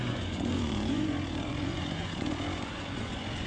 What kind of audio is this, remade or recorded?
remade